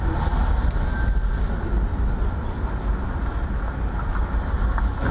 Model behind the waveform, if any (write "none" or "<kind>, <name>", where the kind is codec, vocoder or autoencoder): none